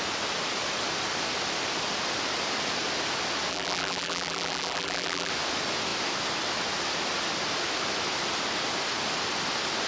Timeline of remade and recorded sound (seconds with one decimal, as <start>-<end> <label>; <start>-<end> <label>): 0.0-3.5 recorded; 3.5-5.3 remade; 5.3-9.9 recorded